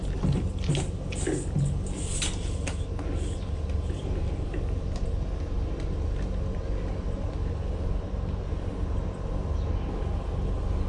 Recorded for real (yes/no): yes